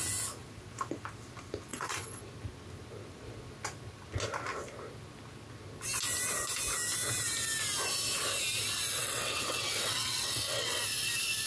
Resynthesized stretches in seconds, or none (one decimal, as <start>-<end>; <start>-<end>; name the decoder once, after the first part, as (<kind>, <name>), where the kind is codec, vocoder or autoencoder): 1.7-2.2 (vocoder, WaveNeXt); 9.0-10.8